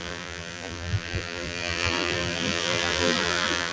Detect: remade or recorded remade